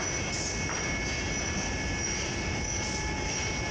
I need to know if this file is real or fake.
real